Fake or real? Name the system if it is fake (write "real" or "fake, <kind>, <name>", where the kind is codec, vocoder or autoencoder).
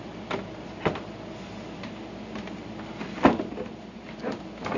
real